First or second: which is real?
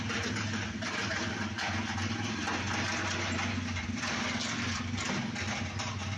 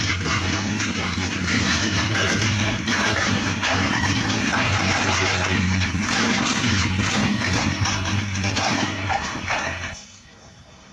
first